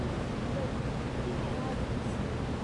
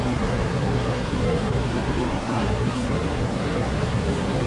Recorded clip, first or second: first